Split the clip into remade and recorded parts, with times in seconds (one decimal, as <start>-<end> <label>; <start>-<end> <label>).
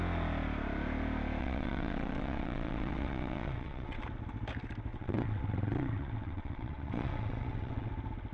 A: 0.0-1.4 recorded; 1.4-4.0 remade; 4.0-4.9 recorded; 4.9-7.9 remade; 7.9-8.3 recorded